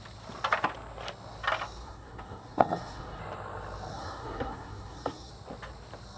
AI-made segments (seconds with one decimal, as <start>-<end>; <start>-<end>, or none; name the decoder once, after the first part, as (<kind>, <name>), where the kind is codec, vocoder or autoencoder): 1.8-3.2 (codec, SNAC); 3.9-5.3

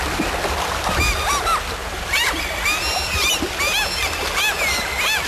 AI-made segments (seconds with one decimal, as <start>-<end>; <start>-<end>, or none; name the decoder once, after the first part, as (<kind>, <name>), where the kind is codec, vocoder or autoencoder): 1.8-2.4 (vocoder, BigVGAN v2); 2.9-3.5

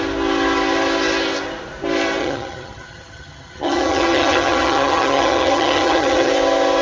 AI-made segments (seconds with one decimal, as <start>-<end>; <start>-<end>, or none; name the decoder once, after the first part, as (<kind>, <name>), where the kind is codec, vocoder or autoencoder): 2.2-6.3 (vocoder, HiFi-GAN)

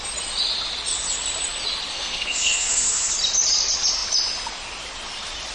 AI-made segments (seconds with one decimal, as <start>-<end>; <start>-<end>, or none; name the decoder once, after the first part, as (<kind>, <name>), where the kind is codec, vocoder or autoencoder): 1.9-3.1 (codec, SNAC)

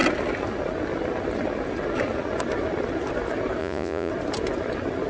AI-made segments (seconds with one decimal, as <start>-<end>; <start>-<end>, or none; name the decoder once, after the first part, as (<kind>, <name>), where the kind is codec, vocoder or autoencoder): 3.6-4.1 (vocoder, Vocos)

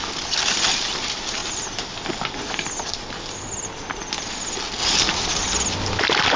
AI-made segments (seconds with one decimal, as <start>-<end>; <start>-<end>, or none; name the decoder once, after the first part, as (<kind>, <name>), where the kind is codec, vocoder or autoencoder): none